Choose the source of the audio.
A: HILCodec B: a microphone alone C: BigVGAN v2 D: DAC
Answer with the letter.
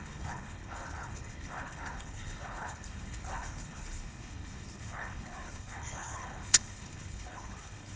A